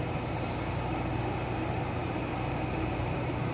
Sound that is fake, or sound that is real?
real